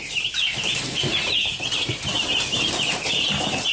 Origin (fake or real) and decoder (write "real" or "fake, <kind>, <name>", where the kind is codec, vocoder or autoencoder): fake, vocoder, BigVGAN v2